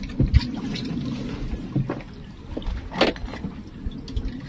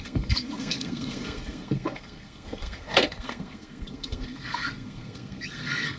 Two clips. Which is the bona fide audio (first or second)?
first